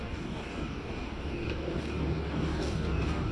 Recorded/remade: remade